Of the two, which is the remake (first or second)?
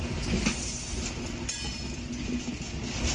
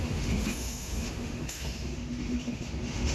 second